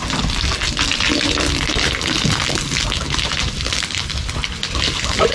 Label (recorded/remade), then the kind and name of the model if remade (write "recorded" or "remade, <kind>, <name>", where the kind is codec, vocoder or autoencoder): recorded